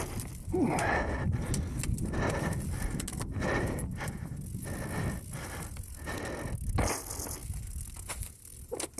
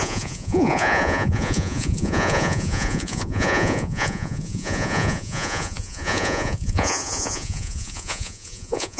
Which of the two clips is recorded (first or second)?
first